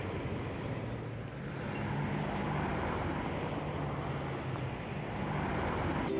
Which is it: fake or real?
real